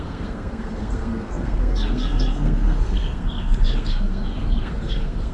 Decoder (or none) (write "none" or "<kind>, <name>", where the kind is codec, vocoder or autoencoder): codec, SNAC